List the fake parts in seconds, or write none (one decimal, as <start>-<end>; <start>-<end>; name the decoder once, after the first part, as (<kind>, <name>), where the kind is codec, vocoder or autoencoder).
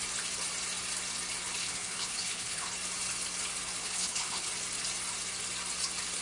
1.6-2.7 (codec, HILCodec); 3.8-4.5